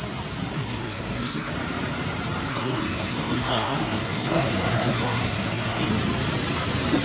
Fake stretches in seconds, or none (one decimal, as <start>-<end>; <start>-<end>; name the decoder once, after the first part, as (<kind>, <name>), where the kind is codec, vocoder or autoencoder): 0.5-1.5 (codec, SNAC); 2.5-5.9

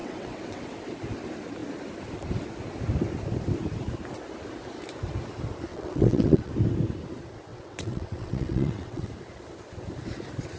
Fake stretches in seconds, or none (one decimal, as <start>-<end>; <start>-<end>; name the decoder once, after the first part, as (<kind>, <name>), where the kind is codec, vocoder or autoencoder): 0.0-0.6 (vocoder, WaveNeXt); 5.7-6.5; 7.5-9.1

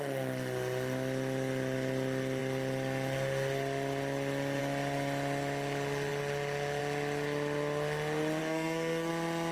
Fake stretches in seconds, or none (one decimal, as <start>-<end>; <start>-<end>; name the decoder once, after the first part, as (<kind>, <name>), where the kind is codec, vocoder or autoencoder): 8.4-9.1 (codec, SNAC)

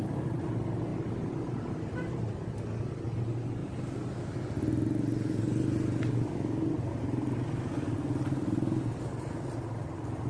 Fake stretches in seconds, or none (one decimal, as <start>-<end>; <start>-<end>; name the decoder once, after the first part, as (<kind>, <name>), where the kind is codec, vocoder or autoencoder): none

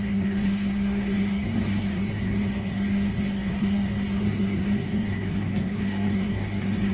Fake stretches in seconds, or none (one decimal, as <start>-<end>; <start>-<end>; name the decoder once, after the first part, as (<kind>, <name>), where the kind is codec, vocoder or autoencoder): 0.0-6.9 (codec, SNAC)

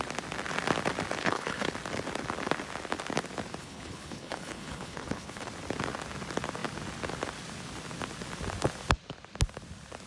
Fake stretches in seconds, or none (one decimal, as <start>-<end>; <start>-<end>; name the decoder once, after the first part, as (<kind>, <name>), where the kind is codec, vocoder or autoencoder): 1.2-1.7 (codec, HILCodec); 3.6-5.5